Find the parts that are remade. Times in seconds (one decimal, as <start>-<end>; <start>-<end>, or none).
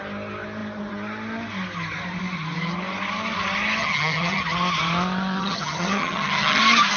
3.8-4.4; 5.4-6.6